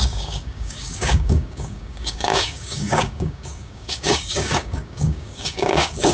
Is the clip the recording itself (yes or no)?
no